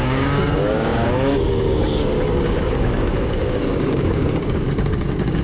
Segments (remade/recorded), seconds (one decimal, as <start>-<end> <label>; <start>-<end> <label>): 0.0-5.4 remade